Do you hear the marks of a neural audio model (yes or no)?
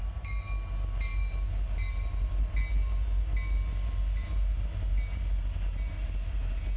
no